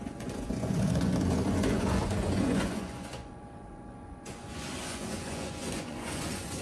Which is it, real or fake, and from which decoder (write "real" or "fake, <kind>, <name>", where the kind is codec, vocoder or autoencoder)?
fake, vocoder, Vocos